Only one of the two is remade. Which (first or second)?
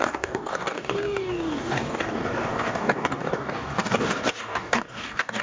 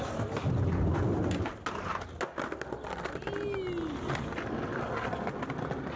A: first